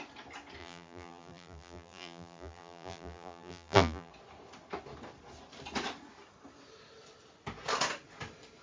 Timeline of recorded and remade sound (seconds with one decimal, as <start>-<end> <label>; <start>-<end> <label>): 0.0-0.6 recorded; 0.6-4.1 remade; 4.1-8.6 recorded